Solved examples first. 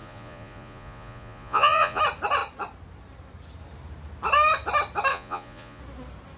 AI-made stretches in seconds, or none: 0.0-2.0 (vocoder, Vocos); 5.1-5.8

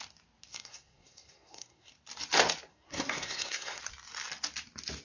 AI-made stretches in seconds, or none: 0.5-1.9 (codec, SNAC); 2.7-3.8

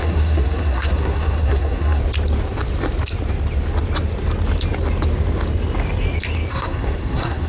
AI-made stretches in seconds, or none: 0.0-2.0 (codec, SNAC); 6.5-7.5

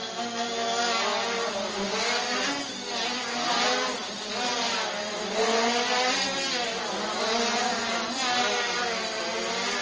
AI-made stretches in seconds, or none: none